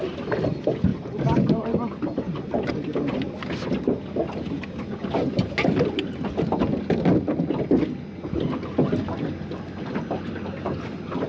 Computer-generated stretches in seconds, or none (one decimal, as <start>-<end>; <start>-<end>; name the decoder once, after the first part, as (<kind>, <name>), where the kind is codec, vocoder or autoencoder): 0.9-2.7 (vocoder, BigVGAN v2)